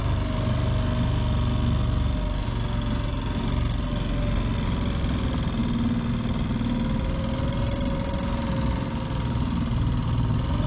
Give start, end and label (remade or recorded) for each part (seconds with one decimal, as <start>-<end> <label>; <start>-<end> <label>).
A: 0.0-10.7 recorded